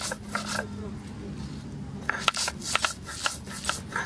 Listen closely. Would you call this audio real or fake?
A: real